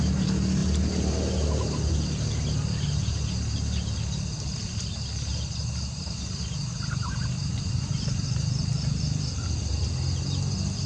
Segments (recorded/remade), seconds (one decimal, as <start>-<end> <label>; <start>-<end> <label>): 0.0-5.6 recorded; 5.6-8.7 remade; 8.7-10.9 recorded